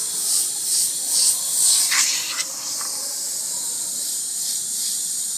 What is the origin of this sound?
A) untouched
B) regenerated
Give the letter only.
B